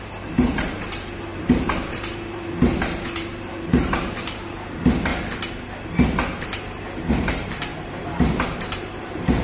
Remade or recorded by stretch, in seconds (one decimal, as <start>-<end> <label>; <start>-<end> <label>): 0.0-5.1 remade; 5.1-7.1 recorded; 7.1-7.7 remade; 7.7-8.6 recorded; 8.6-9.4 remade